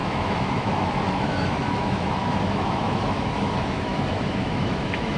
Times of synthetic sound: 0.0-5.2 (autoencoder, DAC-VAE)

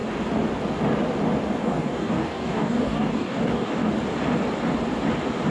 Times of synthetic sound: 1.6-3.8 (codec, DAC)

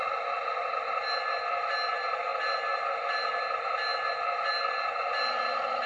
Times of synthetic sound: none

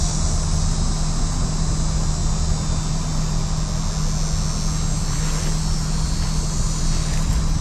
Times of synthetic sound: none